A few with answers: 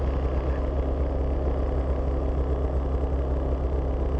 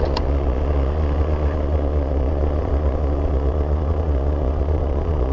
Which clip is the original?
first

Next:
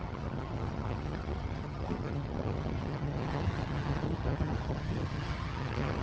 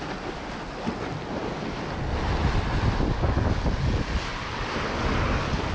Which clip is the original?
second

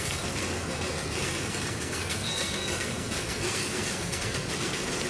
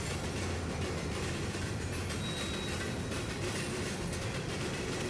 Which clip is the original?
second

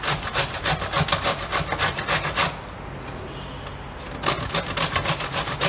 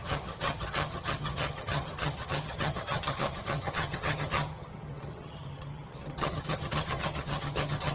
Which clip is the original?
first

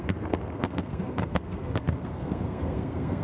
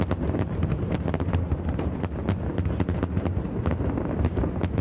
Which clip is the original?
second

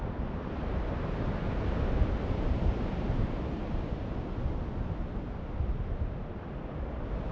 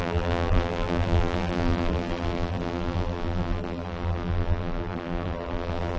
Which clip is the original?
first